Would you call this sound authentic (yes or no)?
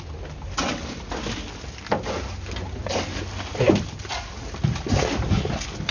yes